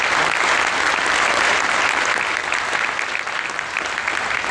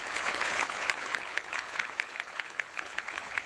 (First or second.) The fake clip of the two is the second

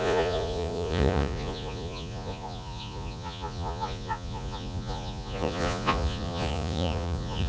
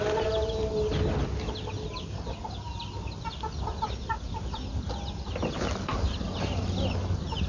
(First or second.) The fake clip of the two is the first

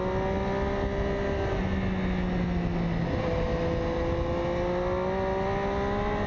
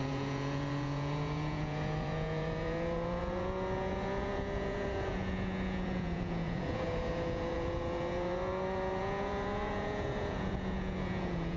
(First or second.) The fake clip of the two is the second